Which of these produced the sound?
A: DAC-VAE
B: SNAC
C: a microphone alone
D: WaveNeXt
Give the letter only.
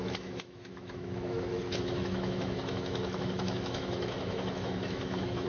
A